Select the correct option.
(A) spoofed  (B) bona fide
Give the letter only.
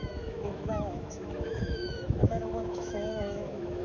A